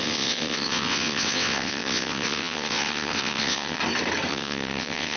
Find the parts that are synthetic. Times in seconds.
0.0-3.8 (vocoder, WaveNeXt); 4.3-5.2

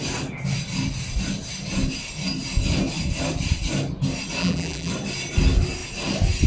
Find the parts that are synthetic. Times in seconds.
4.4-4.9 (vocoder, BigVGAN v2)